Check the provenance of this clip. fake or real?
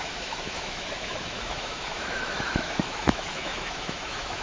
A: fake